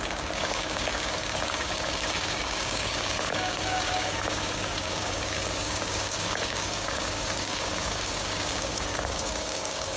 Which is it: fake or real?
fake